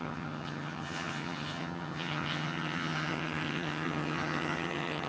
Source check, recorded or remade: remade